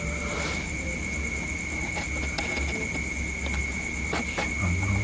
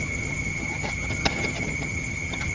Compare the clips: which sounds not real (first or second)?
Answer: second